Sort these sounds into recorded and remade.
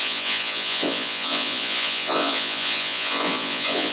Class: remade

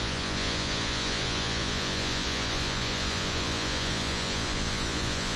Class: remade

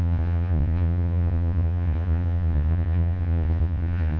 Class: remade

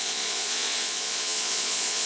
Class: remade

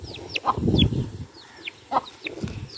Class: recorded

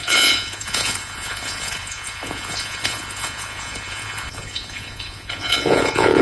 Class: remade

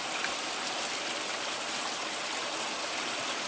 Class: recorded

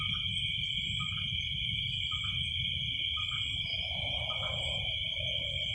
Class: recorded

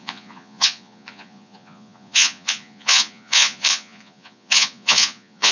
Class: remade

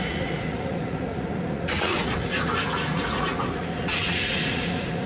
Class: remade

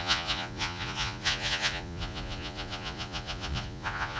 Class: remade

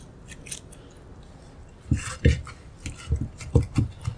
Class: recorded